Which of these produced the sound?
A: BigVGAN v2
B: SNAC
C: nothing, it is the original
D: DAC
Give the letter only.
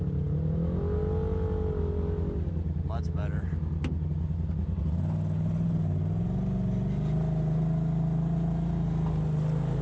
C